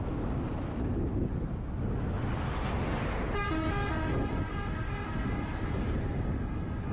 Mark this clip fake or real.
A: real